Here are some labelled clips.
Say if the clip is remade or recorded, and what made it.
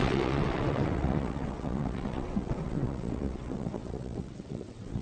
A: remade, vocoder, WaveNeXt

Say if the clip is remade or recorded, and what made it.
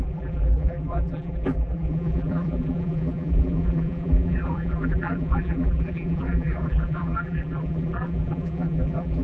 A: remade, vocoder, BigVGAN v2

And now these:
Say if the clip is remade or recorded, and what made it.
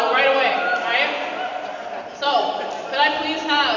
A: recorded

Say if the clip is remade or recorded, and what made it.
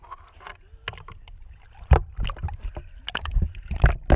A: recorded